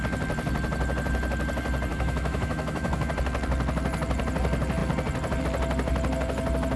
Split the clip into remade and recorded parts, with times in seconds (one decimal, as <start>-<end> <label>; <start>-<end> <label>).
0.0-1.9 recorded; 1.9-3.1 remade; 3.1-6.8 recorded